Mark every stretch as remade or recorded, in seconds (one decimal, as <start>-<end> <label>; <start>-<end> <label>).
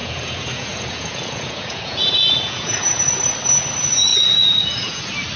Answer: 0.0-3.2 remade; 3.2-4.1 recorded; 4.1-5.0 remade; 5.0-5.4 recorded